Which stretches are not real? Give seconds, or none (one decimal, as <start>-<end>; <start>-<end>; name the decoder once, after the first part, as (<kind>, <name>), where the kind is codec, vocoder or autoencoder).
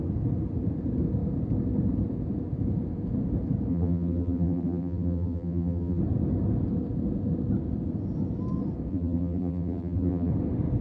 3.7-6.0 (vocoder, BigVGAN v2); 8.9-10.3